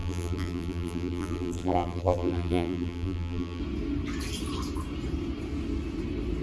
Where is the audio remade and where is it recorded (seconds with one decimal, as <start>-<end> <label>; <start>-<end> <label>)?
0.0-3.6 remade; 3.6-6.4 recorded

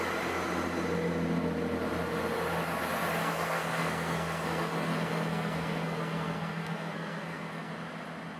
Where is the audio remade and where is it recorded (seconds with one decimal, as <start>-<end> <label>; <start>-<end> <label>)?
0.0-3.2 recorded; 3.2-7.7 remade; 7.7-8.4 recorded

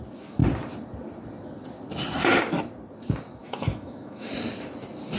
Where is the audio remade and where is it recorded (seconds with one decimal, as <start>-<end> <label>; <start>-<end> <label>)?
0.0-3.4 recorded; 3.4-4.3 remade; 4.3-5.2 recorded

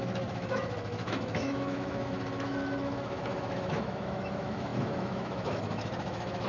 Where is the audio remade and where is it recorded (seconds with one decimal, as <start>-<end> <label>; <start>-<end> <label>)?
0.0-6.5 remade

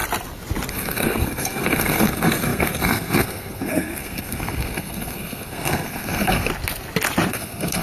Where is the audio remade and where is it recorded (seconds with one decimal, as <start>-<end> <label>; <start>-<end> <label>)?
0.0-0.7 recorded; 0.7-6.5 remade; 6.5-7.3 recorded; 7.3-7.8 remade